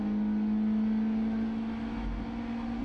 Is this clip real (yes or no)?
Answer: yes